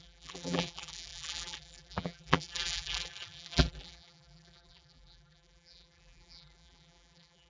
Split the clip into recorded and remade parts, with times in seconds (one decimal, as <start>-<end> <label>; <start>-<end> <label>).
0.0-7.5 remade

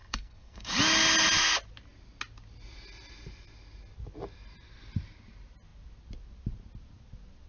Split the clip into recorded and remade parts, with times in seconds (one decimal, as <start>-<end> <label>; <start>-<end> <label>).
0.0-0.7 remade; 0.7-7.5 recorded

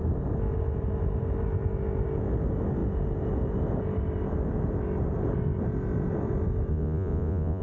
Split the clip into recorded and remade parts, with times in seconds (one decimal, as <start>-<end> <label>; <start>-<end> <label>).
0.0-6.7 recorded; 6.7-7.6 remade

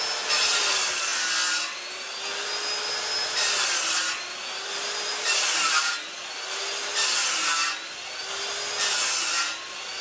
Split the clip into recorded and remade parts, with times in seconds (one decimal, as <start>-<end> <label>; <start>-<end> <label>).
0.0-10.0 recorded

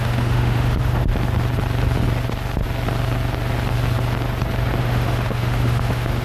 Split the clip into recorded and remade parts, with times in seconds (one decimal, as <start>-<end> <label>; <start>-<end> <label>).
0.0-1.1 remade; 1.1-4.8 recorded; 4.8-6.2 remade